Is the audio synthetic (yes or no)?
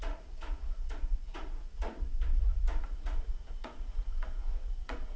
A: yes